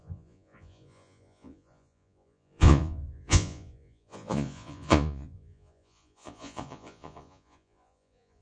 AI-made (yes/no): yes